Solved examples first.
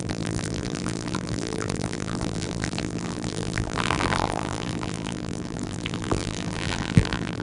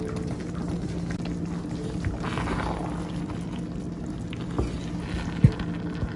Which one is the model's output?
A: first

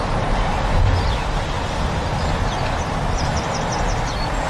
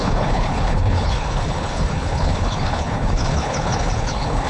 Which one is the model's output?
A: second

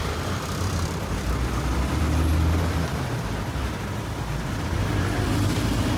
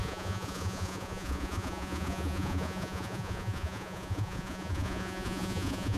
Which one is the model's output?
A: second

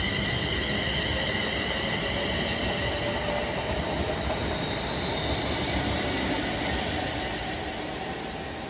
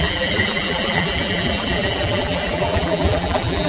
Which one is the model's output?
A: second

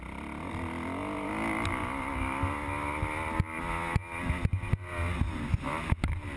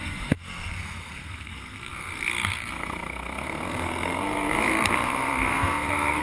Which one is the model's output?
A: second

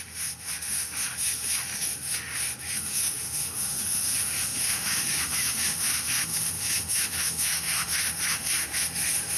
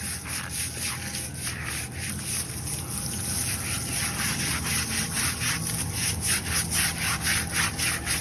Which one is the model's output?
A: first